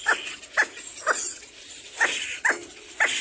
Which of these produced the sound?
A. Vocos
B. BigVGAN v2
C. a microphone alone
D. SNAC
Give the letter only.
B